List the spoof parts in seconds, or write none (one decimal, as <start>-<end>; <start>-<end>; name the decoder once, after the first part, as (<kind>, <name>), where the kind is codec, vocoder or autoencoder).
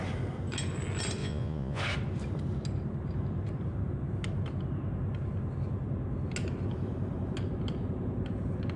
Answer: 1.2-1.8 (vocoder, Vocos)